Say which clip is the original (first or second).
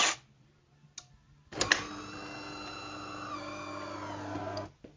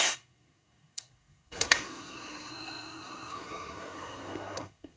first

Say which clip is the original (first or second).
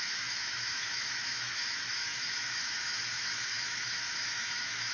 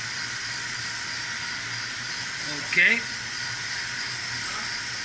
second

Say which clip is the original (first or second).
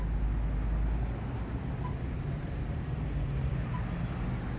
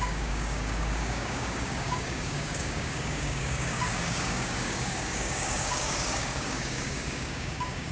first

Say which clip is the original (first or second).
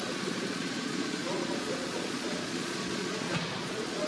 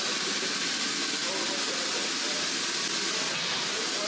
second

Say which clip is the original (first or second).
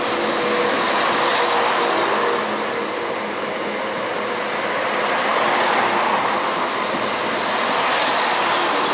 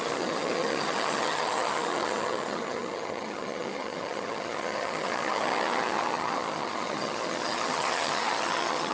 first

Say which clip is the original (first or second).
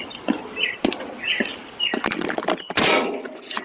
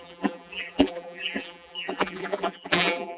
first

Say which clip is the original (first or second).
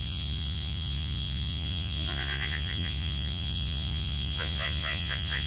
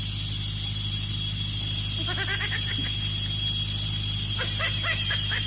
second